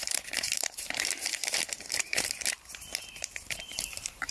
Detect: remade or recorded remade